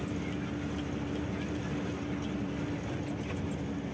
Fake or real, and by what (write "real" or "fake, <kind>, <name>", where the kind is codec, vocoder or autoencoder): real